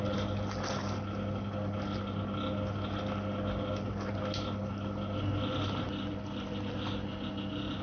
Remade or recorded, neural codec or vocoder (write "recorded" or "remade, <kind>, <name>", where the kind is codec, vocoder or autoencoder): recorded